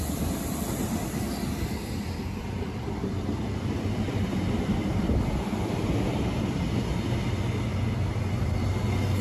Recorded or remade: recorded